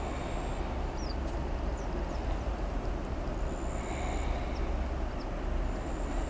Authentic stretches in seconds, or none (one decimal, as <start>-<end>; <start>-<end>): 0.0-6.3